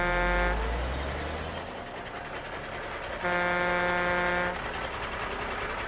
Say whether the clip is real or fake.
real